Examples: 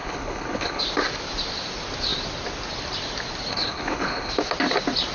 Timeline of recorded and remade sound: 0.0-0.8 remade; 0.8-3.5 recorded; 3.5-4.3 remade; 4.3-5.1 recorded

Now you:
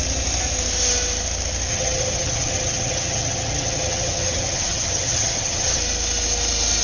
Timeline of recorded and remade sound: 0.0-1.7 recorded; 1.7-5.8 remade; 5.8-6.8 recorded

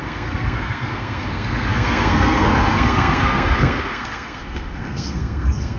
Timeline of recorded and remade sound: 0.0-5.8 remade

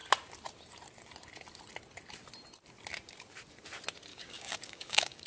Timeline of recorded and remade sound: 0.0-4.1 recorded; 4.1-5.3 remade